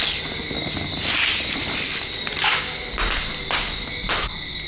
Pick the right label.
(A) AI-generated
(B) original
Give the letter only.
B